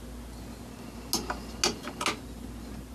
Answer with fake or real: real